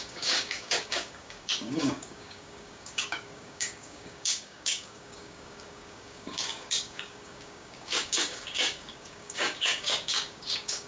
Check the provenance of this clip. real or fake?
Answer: fake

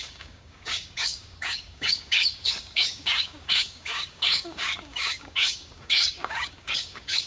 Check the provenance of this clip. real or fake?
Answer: fake